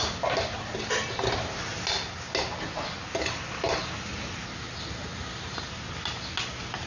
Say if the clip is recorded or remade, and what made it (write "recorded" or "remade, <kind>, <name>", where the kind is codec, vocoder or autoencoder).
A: recorded